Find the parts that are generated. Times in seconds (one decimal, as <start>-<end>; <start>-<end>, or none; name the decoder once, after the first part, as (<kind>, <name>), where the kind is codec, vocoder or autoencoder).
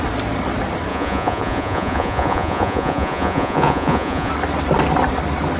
0.9-4.3 (vocoder, Vocos)